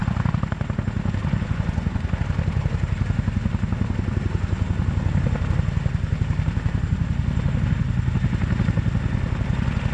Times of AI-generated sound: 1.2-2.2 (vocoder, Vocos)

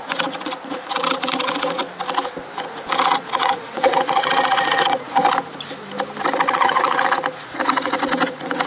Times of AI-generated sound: 0.0-1.8 (vocoder, Vocos); 2.9-5.2; 6.5-8.7

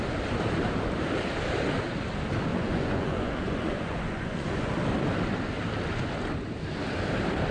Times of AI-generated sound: 2.5-4.7 (vocoder, Vocos)